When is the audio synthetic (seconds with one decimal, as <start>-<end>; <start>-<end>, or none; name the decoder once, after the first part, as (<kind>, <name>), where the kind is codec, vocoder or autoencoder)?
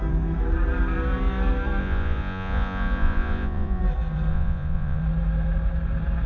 1.8-3.8 (vocoder, Vocos); 4.3-5.0